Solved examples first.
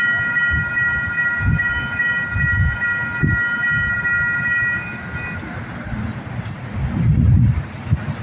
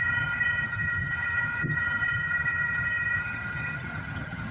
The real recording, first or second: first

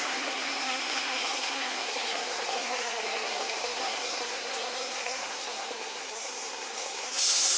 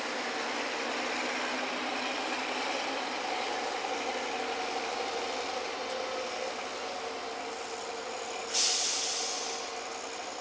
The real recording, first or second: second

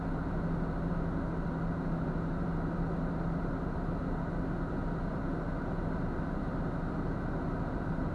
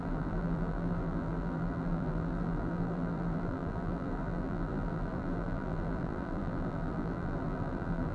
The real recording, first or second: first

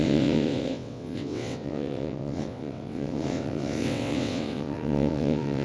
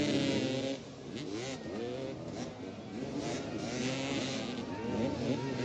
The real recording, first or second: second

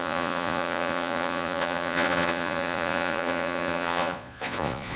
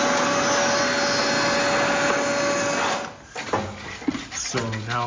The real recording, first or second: second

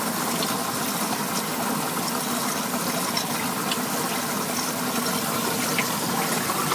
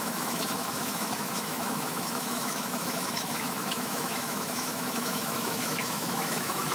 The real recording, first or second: first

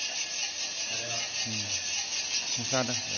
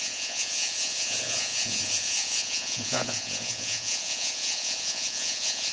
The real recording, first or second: first